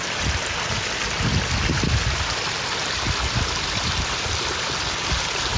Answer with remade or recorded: recorded